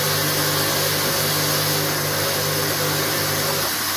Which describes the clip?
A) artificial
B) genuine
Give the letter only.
B